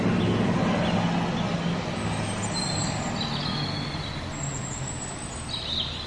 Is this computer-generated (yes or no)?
no